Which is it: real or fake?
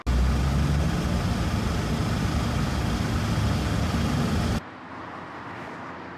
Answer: real